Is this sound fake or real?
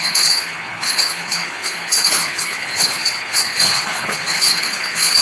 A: fake